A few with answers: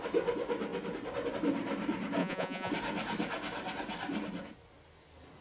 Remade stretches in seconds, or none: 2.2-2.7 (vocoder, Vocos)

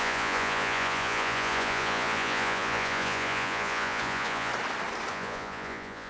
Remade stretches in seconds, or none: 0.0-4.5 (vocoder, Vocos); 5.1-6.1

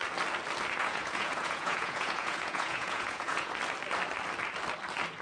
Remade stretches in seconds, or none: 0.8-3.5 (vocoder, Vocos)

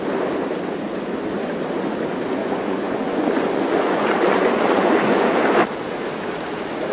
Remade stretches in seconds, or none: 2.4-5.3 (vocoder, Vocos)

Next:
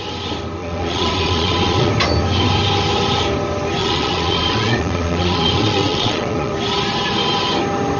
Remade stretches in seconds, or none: 0.6-1.9 (vocoder, Vocos); 3.8-6.5

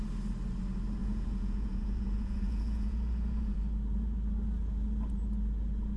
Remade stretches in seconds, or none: 1.0-3.6 (vocoder, Vocos)

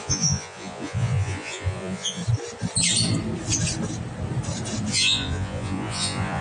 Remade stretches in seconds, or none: 0.0-2.2 (vocoder, Vocos); 4.9-6.4